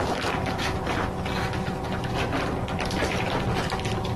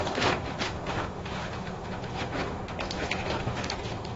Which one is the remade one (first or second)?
second